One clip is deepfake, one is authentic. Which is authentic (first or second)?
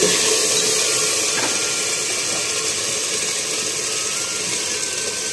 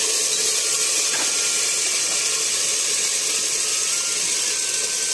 first